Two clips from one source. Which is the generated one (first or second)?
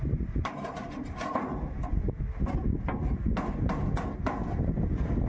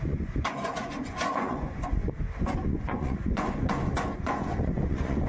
second